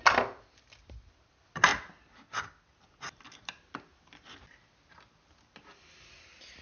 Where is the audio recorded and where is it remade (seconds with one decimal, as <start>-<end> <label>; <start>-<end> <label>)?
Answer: 0.0-6.6 recorded